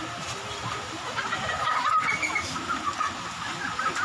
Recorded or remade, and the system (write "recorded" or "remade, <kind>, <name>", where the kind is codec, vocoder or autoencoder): recorded